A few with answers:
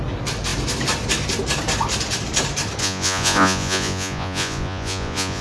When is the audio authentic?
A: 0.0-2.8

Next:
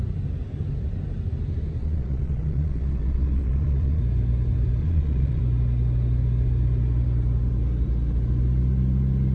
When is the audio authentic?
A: 0.0-1.8; 4.0-4.8; 5.4-9.3

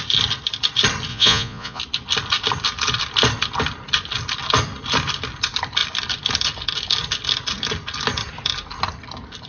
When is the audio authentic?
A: 0.0-1.1; 1.8-9.5

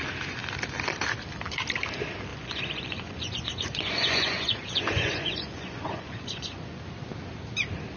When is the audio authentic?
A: 0.0-2.3; 6.8-8.0

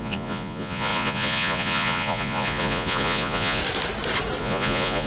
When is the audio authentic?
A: 3.6-4.4

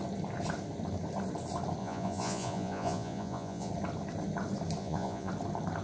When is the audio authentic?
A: 0.0-1.8; 3.7-4.8; 5.3-5.8